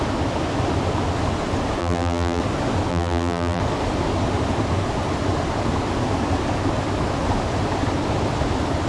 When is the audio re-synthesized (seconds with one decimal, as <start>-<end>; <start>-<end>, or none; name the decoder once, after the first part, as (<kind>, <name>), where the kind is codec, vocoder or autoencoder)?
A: 1.8-2.4 (vocoder, BigVGAN v2); 2.9-3.6